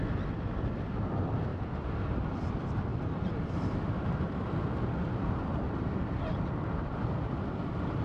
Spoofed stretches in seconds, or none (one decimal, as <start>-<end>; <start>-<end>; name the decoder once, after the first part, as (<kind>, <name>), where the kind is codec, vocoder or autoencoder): 1.5-2.3 (vocoder, BigVGAN v2)